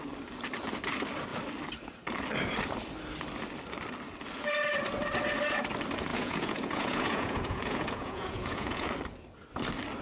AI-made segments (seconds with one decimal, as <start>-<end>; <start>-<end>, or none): 6.1-8.9